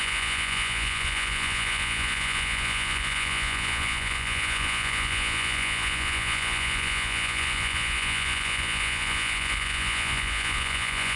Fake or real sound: fake